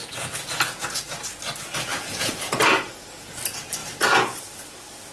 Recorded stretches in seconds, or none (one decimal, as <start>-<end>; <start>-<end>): 1.0-1.9; 2.6-3.8; 4.4-5.1